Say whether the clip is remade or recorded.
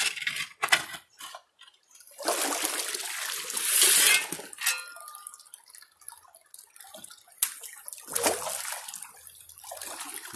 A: recorded